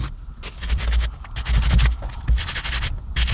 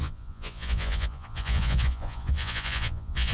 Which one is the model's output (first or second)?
second